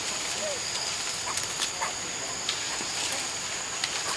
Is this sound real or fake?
real